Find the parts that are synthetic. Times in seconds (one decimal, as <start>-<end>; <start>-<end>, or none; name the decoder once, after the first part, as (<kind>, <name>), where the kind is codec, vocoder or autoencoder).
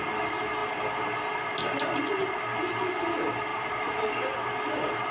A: 3.5-4.1 (vocoder, BigVGAN v2)